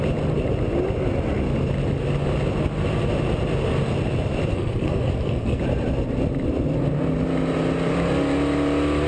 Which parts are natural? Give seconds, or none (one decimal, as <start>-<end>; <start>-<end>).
0.0-4.5; 5.6-9.1